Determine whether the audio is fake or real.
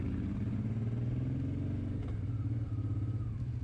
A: real